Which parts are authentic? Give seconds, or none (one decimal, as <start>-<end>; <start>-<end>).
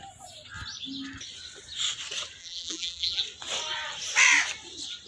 0.0-2.4; 3.2-5.1